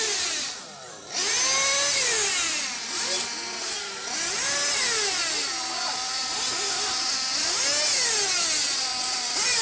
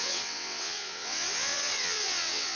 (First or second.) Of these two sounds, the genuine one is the first